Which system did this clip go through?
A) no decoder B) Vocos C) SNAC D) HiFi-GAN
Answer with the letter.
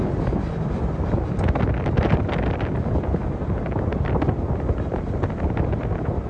A